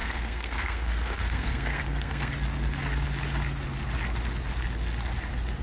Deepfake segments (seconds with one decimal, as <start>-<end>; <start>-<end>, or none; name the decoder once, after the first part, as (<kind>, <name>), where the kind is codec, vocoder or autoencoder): 0.0-2.3 (codec, SNAC)